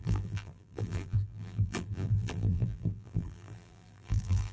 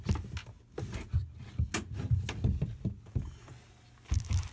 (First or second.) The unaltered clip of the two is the second